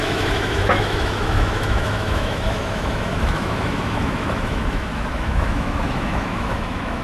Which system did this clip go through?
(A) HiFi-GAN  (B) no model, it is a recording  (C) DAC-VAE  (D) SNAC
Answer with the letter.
C